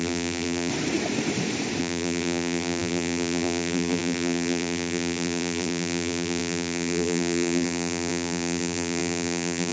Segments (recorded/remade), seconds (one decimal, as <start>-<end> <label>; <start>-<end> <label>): 0.0-0.7 remade; 0.7-1.8 recorded; 1.8-9.7 remade